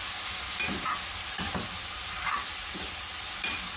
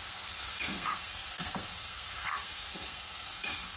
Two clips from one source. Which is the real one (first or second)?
first